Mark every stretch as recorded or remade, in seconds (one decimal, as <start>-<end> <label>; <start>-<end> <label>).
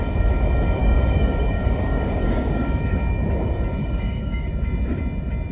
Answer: 0.0-0.8 recorded; 0.8-2.8 remade; 2.8-3.8 recorded; 3.8-4.5 remade; 4.5-5.5 recorded